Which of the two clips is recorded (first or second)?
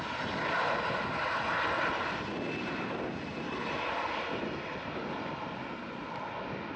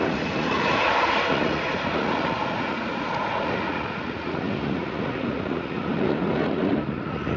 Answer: first